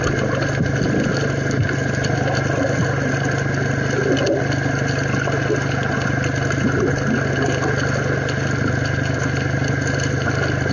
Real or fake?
real